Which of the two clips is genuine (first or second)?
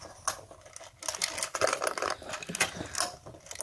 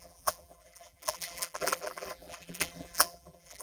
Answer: first